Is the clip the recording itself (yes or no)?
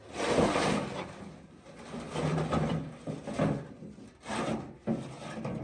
yes